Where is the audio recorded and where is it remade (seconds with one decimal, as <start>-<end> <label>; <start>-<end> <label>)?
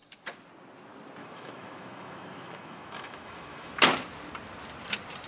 0.0-1.2 recorded; 1.2-3.7 remade; 3.7-5.3 recorded